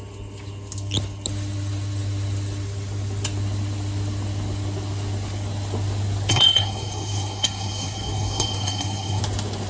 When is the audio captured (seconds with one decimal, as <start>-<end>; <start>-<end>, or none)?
0.0-6.3; 9.2-9.7